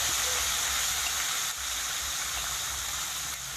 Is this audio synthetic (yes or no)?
no